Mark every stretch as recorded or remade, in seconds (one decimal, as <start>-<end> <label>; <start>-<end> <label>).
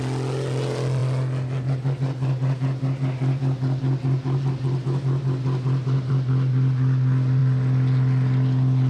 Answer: 0.0-8.9 recorded